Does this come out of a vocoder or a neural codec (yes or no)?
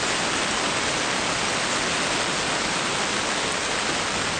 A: no